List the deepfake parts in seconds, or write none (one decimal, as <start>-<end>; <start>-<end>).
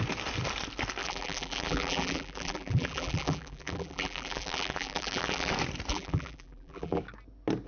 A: 1.0-5.5; 5.9-7.0